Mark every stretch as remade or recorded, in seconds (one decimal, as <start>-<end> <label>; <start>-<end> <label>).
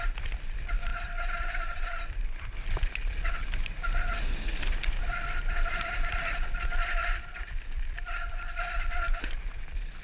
0.0-0.9 remade; 0.9-2.0 recorded; 2.0-4.5 remade; 4.5-5.0 recorded; 5.0-10.0 remade